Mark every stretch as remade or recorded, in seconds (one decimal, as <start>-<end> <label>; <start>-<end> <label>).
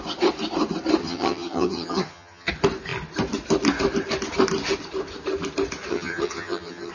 0.0-1.0 recorded; 1.0-2.5 remade; 2.5-5.9 recorded; 5.9-6.9 remade